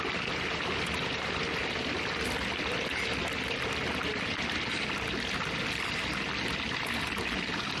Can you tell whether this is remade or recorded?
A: recorded